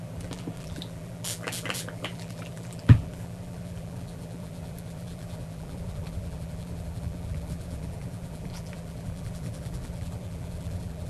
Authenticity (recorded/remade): remade